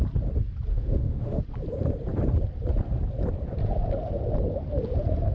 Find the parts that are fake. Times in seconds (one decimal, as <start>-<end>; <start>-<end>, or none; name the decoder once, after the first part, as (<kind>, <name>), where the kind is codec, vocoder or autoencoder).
0.7-1.4 (autoencoder, DAC-VAE)